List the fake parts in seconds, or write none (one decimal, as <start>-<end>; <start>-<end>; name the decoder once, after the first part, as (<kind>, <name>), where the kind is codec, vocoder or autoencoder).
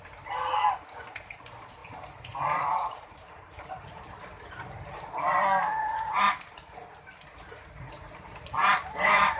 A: 1.8-4.0 (vocoder, BigVGAN v2)